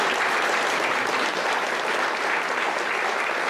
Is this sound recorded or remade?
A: recorded